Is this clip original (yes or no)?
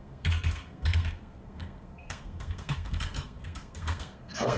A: no